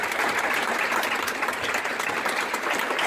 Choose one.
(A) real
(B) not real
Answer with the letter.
B